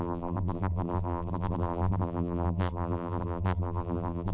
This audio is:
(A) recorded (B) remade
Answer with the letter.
B